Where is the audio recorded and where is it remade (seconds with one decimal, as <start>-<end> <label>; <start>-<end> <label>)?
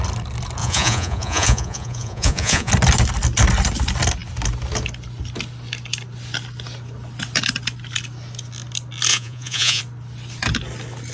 0.0-0.6 recorded; 0.6-2.7 remade; 2.7-9.1 recorded; 9.1-9.8 remade; 9.8-11.1 recorded